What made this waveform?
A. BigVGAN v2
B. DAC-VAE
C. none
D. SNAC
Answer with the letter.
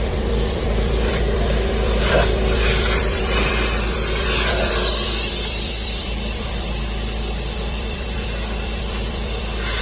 A